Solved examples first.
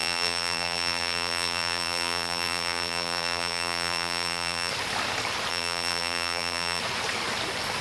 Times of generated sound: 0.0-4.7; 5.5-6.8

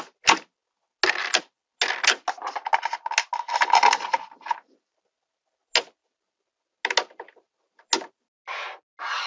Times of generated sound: none

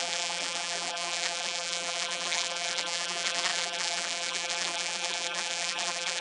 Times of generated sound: 0.0-6.2

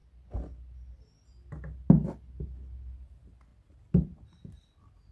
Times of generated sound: none